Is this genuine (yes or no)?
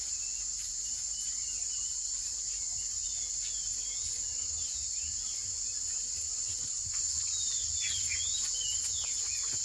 yes